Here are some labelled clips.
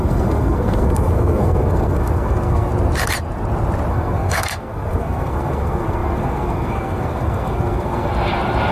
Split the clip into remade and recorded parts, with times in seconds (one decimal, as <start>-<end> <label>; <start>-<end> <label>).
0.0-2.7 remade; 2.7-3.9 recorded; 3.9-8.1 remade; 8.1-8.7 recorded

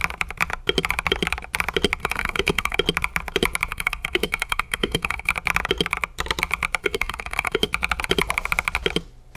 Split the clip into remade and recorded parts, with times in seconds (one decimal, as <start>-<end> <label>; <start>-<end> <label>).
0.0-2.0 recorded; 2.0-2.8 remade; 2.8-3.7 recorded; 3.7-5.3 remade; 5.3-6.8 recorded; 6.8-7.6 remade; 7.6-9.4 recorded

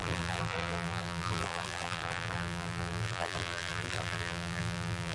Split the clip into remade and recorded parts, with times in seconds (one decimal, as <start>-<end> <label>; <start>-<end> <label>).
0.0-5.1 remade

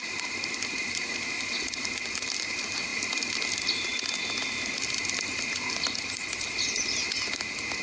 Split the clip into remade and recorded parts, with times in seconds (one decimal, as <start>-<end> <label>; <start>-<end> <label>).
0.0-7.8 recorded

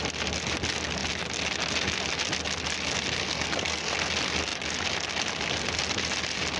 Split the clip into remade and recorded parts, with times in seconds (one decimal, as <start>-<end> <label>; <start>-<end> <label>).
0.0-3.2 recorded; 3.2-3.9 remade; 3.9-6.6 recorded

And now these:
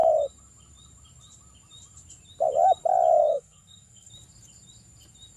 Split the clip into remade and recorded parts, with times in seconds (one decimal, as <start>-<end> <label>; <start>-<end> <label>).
0.0-3.2 recorded; 3.2-4.1 remade; 4.1-5.4 recorded